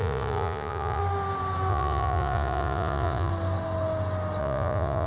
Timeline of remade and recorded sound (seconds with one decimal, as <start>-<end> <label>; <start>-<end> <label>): 0.0-1.0 remade; 1.0-1.7 recorded; 1.7-3.3 remade; 3.3-4.4 recorded; 4.4-5.1 remade